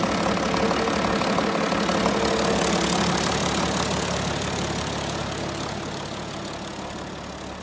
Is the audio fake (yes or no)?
no